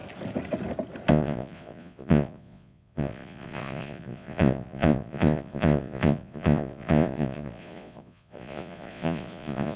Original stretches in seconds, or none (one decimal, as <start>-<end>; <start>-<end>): 0.0-1.1